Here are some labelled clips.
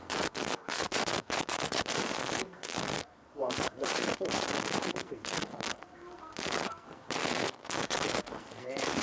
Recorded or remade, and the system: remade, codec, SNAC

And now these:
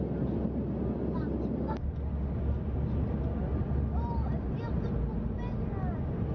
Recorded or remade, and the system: recorded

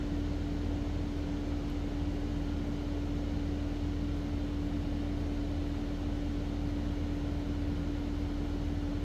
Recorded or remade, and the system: recorded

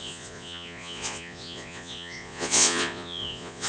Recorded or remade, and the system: remade, vocoder, Vocos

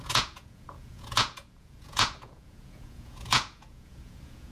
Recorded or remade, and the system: remade, vocoder, Vocos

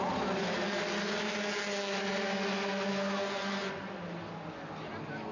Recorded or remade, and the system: recorded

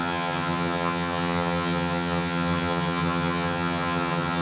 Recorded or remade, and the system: remade, vocoder, HiFi-GAN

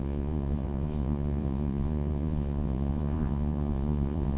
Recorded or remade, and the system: remade, vocoder, Vocos